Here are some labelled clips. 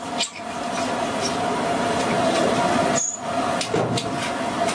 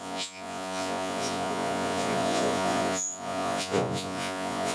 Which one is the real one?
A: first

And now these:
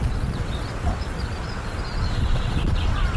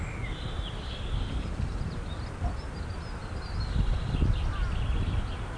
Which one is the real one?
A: second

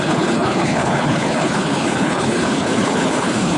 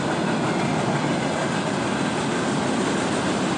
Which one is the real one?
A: second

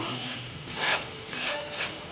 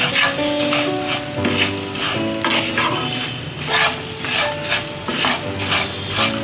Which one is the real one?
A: second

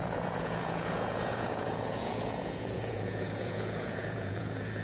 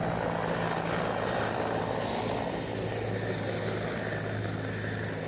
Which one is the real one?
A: second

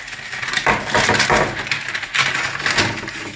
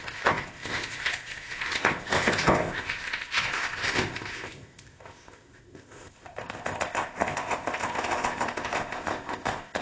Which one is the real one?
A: first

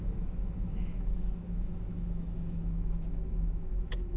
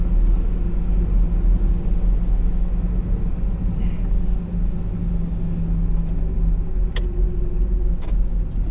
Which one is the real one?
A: second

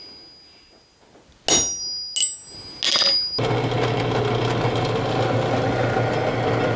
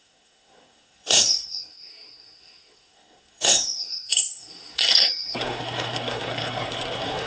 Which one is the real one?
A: first